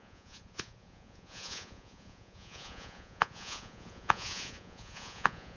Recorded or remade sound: remade